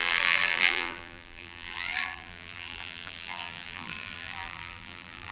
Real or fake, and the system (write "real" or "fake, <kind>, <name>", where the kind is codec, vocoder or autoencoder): fake, vocoder, BigVGAN v2